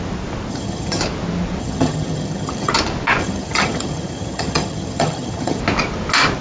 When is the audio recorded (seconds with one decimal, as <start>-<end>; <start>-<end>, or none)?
0.0-0.5; 1.0-1.6; 2.7-3.2; 5.6-6.4